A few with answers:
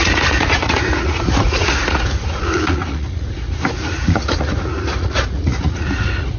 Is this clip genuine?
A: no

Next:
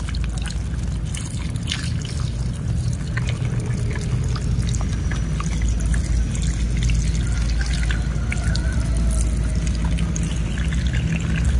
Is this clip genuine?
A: yes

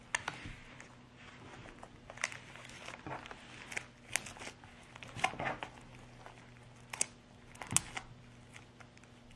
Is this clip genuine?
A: yes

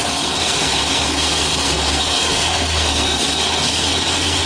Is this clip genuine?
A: no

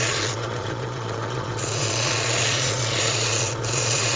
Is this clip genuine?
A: no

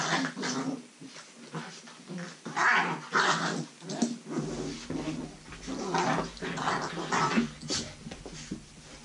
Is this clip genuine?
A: yes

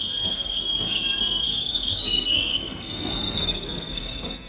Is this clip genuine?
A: no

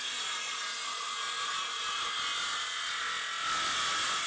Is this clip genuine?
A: yes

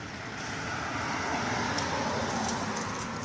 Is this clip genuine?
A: yes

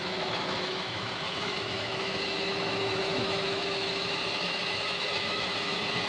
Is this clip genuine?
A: no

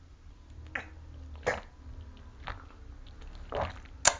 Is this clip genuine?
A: yes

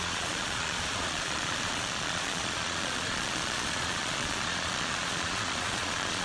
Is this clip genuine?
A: no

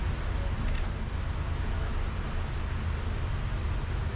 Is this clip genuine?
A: yes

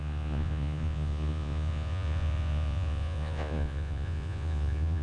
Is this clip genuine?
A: no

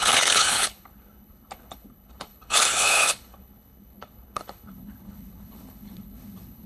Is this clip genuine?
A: no